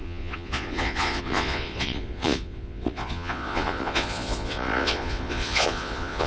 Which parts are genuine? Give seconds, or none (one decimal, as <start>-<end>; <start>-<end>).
none